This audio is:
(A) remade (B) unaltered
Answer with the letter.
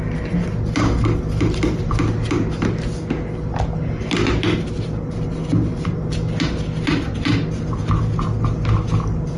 B